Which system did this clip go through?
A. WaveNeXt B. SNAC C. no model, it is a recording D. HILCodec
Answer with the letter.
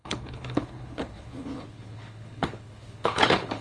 D